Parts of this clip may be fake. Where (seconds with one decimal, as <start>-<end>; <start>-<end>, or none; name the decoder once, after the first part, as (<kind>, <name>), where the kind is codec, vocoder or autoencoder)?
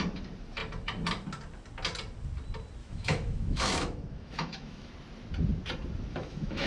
2.8-4.9 (autoencoder, DAC-VAE); 6.1-6.7